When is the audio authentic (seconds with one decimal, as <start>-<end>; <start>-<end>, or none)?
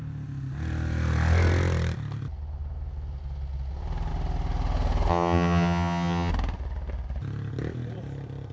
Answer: 0.0-5.1; 6.3-8.5